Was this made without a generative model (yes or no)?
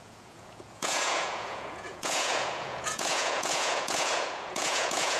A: no